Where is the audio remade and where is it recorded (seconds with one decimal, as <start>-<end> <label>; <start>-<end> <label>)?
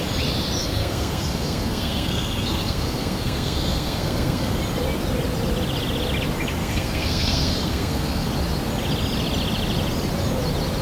0.0-0.6 recorded; 0.6-4.6 remade; 4.6-6.6 recorded; 6.6-8.3 remade; 8.3-10.8 recorded